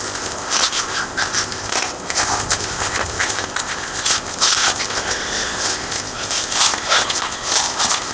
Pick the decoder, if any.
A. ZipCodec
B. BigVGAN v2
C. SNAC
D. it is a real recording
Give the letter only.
A